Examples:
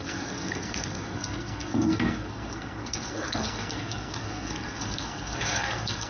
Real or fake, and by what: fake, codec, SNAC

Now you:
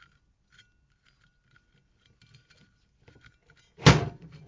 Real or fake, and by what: real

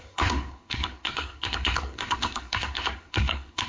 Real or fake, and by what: fake, codec, SNAC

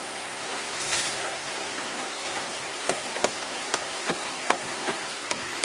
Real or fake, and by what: fake, codec, SNAC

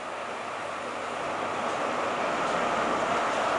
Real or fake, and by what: real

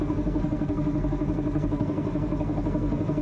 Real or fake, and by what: fake, codec, SNAC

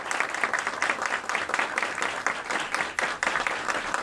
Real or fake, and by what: real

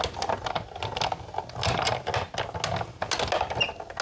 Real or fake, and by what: real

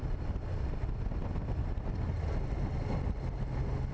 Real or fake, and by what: real